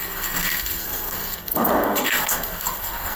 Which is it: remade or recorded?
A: remade